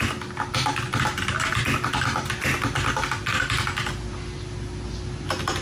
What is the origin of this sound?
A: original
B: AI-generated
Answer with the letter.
A